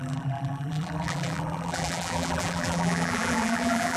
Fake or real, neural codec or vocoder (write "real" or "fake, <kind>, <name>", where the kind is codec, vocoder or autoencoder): fake, vocoder, BigVGAN v2